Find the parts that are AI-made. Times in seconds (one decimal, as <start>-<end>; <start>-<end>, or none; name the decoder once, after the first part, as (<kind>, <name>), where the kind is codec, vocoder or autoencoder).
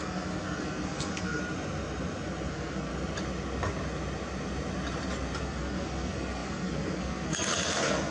0.0-1.4 (codec, SNAC); 2.5-2.9; 5.4-8.1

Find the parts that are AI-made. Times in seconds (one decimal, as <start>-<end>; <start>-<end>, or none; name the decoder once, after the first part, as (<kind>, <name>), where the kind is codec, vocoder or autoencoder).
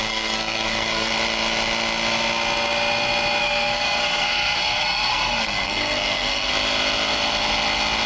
0.0-1.1 (codec, SNAC); 3.4-6.5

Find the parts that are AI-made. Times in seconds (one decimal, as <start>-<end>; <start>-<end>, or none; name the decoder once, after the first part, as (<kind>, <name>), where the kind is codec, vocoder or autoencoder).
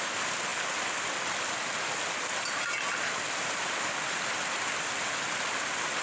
none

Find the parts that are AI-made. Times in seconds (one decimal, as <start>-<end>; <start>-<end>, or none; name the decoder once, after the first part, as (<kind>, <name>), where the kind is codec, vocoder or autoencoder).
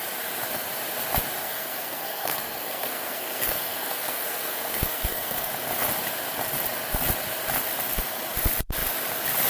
1.4-5.5 (codec, SNAC)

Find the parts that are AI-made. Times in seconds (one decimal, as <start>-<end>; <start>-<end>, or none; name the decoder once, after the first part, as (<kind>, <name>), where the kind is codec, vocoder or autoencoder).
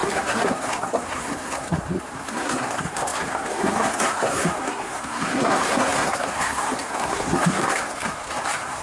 0.0-8.8 (codec, SNAC)